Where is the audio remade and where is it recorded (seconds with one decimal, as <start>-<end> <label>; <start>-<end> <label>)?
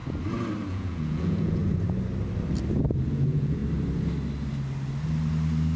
0.0-0.7 recorded; 0.7-1.6 remade; 1.6-3.1 recorded; 3.1-3.6 remade; 3.6-5.8 recorded